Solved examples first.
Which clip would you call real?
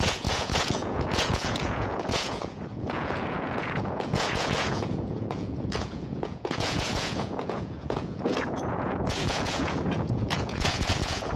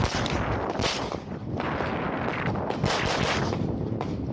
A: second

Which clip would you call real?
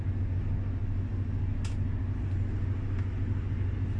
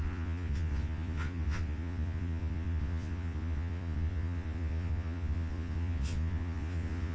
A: first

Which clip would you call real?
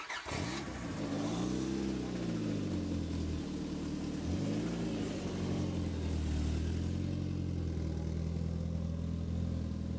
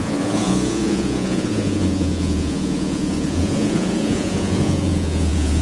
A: first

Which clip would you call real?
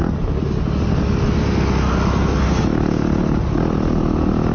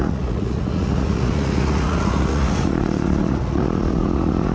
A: first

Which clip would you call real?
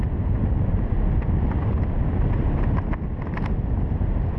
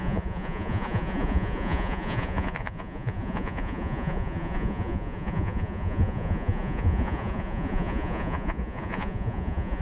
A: first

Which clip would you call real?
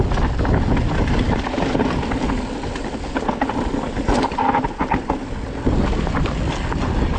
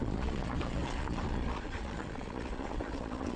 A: first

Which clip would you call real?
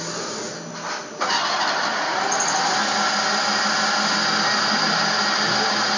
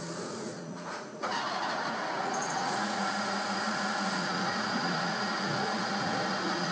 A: first